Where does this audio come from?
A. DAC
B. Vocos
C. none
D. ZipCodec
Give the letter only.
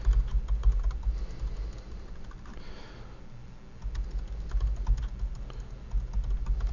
C